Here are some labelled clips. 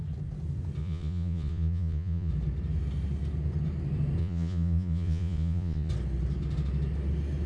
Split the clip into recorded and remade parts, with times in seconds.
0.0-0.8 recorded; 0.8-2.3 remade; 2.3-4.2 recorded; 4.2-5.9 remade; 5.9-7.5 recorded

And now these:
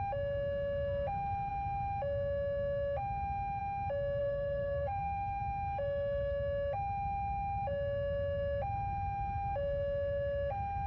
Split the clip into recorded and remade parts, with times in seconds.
0.0-4.2 recorded; 4.2-5.4 remade; 5.4-10.9 recorded

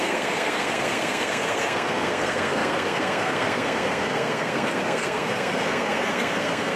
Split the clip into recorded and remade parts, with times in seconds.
0.0-6.8 remade

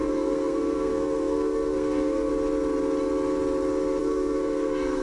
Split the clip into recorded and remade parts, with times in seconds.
0.0-2.3 remade; 2.3-4.0 recorded; 4.0-5.0 remade